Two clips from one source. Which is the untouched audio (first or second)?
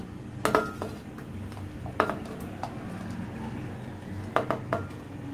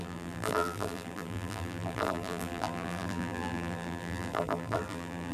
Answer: first